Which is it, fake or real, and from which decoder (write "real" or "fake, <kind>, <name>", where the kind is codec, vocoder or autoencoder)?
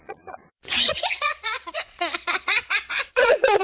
fake, vocoder, Vocos